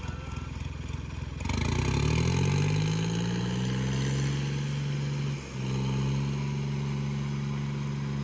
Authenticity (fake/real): real